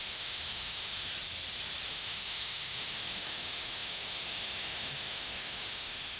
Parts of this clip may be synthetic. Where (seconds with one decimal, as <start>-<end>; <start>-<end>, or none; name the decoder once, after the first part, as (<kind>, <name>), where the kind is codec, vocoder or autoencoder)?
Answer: 0.0-1.1 (autoencoder, DAC-VAE); 1.9-6.2